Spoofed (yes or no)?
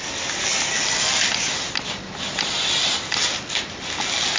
no